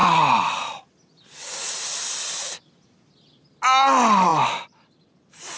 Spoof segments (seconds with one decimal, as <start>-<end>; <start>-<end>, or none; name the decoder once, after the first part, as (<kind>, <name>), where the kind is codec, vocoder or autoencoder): none

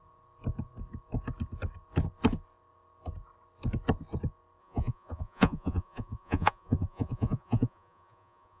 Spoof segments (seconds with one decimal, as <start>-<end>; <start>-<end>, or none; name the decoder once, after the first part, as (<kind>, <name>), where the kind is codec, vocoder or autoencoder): 4.6-8.6 (vocoder, Vocos)

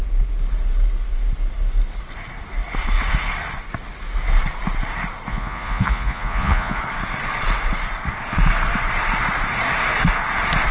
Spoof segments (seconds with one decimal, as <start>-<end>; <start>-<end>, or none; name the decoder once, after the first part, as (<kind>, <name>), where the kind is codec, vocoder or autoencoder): 5.3-6.8 (vocoder, Vocos)

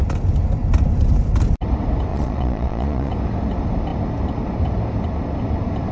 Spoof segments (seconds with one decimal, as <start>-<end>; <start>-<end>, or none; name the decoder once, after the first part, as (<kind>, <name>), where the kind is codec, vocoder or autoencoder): 2.1-3.1 (vocoder, Vocos)